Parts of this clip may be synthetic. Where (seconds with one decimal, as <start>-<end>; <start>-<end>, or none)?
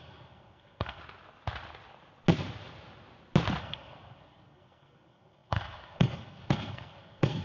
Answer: 0.0-1.0; 3.6-7.4